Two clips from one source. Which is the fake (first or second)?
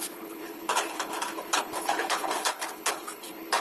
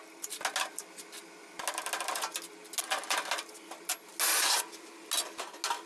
first